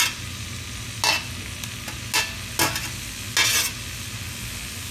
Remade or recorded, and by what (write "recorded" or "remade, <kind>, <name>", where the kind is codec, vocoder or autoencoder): recorded